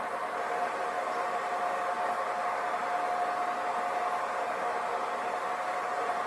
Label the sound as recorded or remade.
recorded